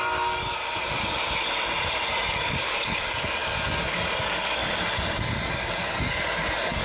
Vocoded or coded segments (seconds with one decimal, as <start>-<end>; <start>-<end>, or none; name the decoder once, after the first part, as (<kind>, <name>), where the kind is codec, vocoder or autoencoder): 0.0-0.6 (codec, DAC); 2.1-4.6; 5.2-6.8